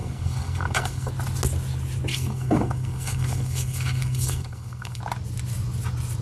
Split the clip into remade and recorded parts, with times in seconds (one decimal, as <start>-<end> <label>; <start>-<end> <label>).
0.0-1.1 remade; 1.1-2.1 recorded; 2.1-5.0 remade; 5.0-6.2 recorded